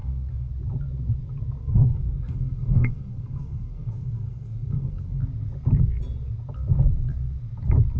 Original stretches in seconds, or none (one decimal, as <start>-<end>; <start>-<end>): 0.5-1.6; 5.2-8.0